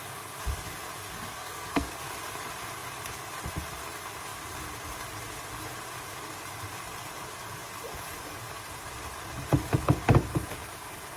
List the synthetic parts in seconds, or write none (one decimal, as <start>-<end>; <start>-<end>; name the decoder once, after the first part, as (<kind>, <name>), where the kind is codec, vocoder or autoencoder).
1.4-2.0 (codec, SNAC)